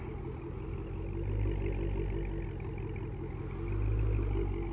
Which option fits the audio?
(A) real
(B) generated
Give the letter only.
A